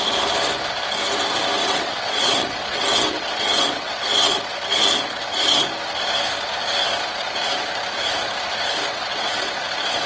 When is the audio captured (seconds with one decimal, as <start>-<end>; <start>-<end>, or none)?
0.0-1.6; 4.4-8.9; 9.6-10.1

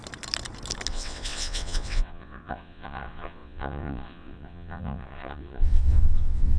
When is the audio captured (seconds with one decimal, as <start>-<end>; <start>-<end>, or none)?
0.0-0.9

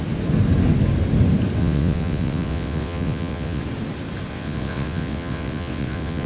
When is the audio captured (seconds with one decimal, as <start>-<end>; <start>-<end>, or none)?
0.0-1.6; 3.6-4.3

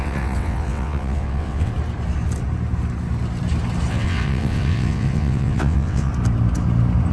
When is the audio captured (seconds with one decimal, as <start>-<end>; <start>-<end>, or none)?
1.7-3.9; 6.1-7.1

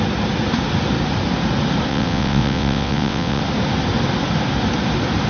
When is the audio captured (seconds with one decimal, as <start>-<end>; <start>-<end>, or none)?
0.0-1.9; 3.4-5.3